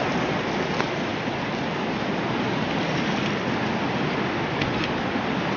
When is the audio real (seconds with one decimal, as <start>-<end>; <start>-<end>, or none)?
0.0-5.6

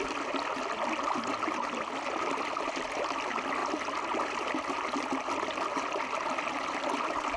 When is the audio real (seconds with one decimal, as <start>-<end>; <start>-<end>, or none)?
0.0-3.6; 6.3-7.4

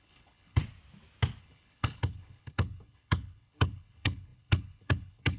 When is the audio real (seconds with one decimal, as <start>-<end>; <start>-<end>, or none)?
0.6-1.4

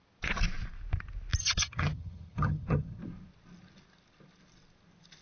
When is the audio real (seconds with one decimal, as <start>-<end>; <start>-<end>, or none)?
0.0-1.4; 3.0-5.2

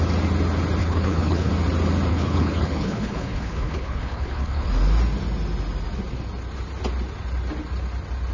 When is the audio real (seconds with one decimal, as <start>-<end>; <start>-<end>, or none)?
0.0-0.8; 1.5-2.1; 4.7-8.3

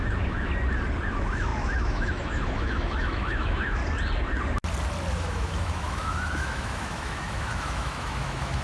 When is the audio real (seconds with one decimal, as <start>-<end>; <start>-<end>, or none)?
0.5-1.1; 3.8-5.1